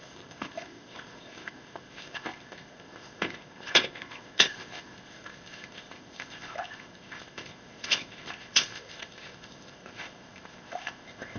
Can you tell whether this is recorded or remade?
remade